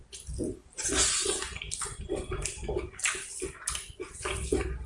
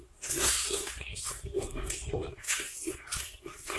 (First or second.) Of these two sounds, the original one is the first